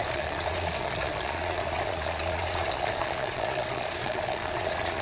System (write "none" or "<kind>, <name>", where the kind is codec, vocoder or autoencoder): vocoder, Vocos